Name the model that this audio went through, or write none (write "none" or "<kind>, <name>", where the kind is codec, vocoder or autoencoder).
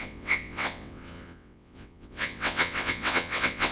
vocoder, WaveNeXt